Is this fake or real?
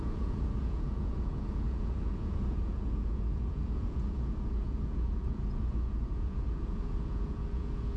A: fake